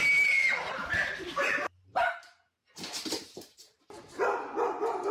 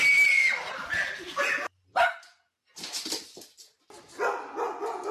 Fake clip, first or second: first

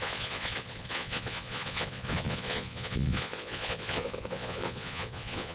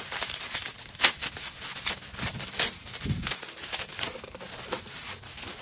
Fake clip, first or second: first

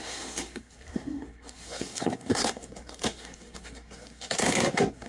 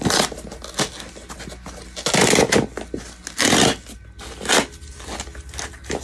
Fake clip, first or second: first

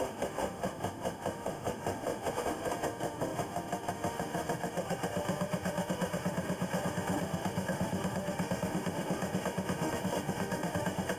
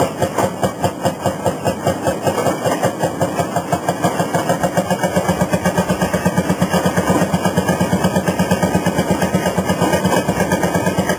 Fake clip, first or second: first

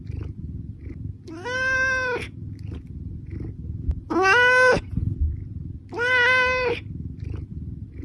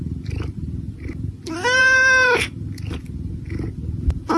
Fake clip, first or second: second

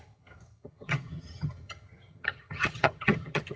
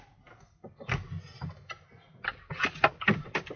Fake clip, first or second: first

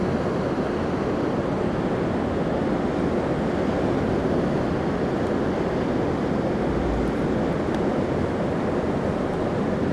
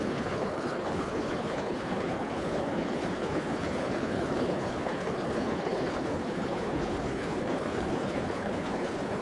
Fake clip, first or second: second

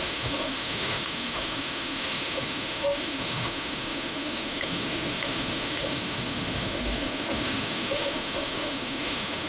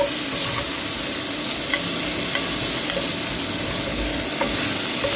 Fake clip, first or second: first